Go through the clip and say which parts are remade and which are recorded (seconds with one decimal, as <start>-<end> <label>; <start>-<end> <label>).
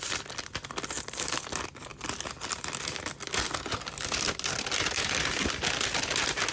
0.0-6.5 recorded